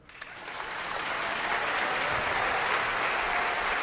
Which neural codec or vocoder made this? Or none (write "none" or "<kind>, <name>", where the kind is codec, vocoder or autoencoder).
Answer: none